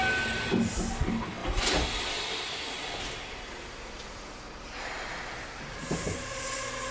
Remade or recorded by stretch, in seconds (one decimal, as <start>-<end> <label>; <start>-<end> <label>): 0.0-6.9 recorded